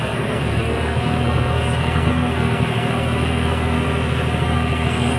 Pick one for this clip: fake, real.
fake